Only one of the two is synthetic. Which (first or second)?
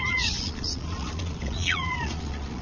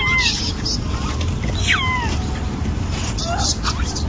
first